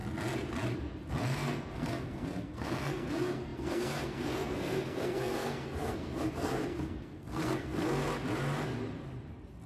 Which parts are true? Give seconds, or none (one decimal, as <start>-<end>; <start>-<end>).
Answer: 0.0-1.1; 8.1-9.7